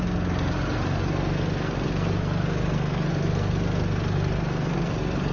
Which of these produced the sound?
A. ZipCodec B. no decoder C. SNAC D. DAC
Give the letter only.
C